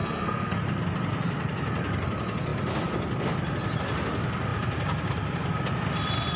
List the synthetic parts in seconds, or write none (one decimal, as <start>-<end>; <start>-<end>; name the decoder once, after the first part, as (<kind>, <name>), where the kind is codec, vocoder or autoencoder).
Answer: 0.0-0.6 (codec, SNAC)